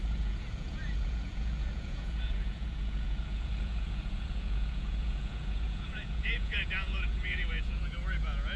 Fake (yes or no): yes